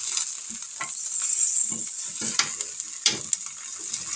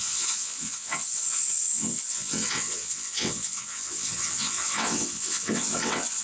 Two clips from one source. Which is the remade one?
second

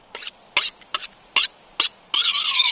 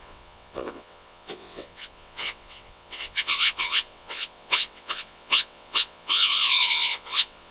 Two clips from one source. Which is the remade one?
second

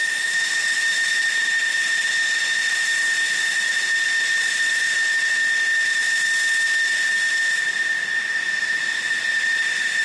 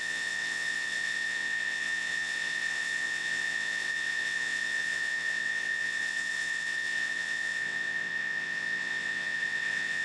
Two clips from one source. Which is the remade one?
second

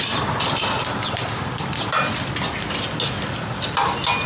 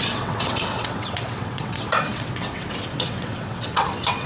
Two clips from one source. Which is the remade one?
second